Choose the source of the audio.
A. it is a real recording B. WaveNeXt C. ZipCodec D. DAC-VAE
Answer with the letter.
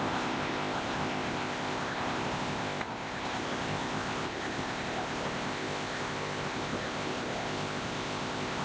C